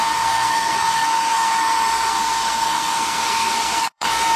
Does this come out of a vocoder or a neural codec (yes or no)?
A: yes